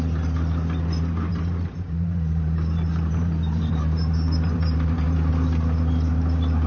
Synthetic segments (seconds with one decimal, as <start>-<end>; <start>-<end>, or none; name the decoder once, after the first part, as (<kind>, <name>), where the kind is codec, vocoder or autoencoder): 1.3-5.3 (vocoder, BigVGAN v2)

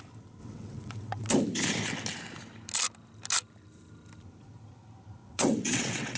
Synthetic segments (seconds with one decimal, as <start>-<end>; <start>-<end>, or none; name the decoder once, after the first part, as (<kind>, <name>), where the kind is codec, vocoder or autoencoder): 0.4-1.3 (vocoder, WaveNeXt); 5.2-6.2

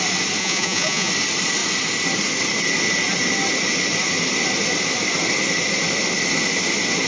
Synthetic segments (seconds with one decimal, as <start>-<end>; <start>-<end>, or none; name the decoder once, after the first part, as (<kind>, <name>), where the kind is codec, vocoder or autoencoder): 0.4-1.1 (vocoder, Vocos)

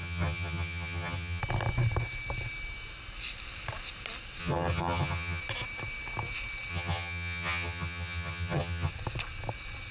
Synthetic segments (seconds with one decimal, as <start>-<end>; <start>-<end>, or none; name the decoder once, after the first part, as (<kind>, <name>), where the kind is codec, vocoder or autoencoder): 0.0-1.4 (vocoder, HiFi-GAN); 4.4-5.4; 6.7-8.9

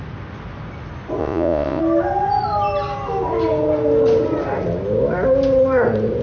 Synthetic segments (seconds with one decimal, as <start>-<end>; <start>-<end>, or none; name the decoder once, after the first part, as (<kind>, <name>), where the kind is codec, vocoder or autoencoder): 1.2-1.8 (vocoder, Vocos)

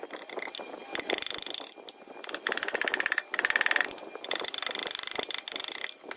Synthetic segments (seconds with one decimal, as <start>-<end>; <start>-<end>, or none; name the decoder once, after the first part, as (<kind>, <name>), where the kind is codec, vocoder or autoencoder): none